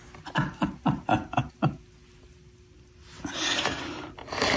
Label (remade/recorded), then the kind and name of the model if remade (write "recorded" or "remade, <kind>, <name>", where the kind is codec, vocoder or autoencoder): recorded